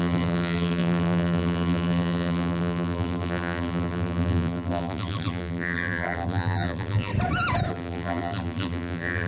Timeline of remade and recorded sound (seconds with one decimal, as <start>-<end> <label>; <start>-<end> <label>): 0.0-7.1 remade; 7.1-7.7 recorded; 7.7-9.3 remade